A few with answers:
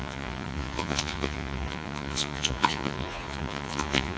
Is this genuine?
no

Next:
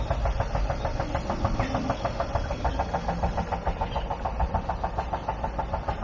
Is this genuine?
yes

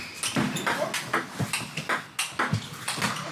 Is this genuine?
yes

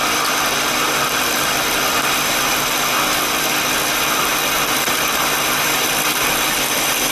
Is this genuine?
yes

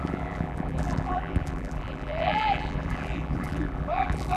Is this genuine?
no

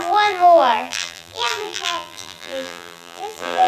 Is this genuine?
no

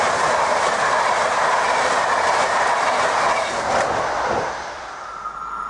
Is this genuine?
yes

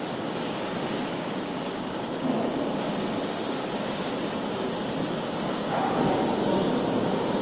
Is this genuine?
no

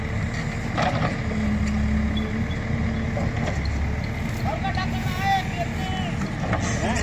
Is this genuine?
yes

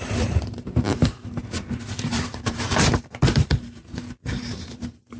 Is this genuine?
no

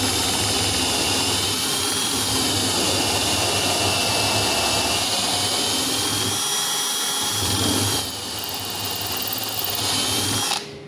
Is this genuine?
yes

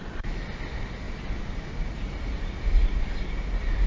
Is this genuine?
yes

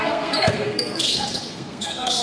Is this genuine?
no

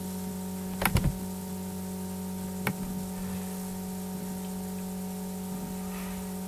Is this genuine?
yes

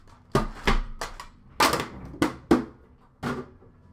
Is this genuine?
yes